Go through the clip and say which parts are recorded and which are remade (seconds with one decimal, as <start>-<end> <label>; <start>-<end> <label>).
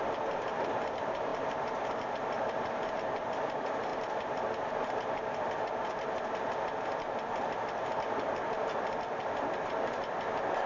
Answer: 0.0-10.7 recorded